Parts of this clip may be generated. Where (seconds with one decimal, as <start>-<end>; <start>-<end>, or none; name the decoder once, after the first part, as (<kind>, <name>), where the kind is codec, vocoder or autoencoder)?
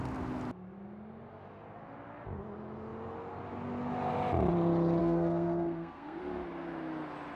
5.0-6.2 (codec, SNAC)